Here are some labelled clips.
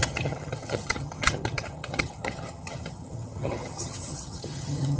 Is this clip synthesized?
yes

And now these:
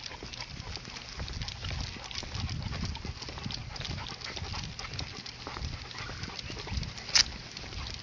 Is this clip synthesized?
no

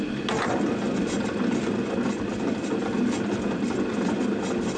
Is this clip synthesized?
no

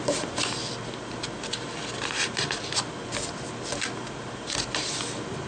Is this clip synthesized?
no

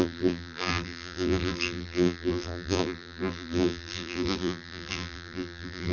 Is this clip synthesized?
yes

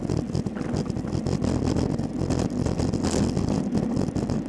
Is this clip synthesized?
no